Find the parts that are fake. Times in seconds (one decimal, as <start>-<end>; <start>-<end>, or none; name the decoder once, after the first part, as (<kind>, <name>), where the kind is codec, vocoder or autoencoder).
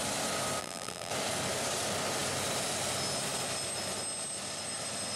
0.6-1.1 (vocoder, BigVGAN v2)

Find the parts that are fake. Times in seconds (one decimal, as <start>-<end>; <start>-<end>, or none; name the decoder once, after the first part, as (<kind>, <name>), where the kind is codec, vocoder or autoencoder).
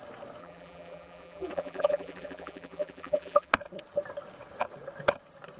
0.4-3.5 (vocoder, BigVGAN v2)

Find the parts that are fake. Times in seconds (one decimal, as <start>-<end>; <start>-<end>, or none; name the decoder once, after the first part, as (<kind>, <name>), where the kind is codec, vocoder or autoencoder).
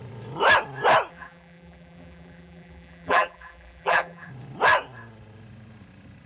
1.1-4.3 (vocoder, BigVGAN v2)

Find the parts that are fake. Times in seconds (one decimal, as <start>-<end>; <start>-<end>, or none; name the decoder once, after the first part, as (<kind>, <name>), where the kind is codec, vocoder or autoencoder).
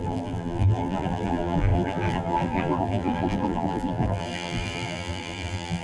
0.0-5.8 (vocoder, BigVGAN v2)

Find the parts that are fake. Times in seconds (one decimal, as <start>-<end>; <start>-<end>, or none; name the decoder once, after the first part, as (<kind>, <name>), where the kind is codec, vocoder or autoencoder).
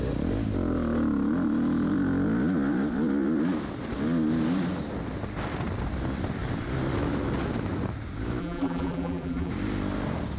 8.4-9.5 (vocoder, BigVGAN v2)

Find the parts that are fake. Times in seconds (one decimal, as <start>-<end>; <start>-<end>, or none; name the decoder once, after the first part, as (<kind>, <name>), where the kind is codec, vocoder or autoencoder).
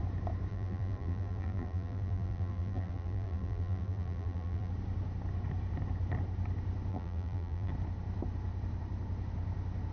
0.5-4.7 (vocoder, BigVGAN v2); 6.9-7.7